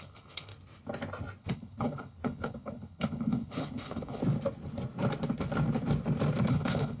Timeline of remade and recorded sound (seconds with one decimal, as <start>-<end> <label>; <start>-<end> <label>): 0.0-0.5 remade; 0.5-1.4 recorded; 1.4-4.2 remade; 4.2-6.5 recorded; 6.5-7.0 remade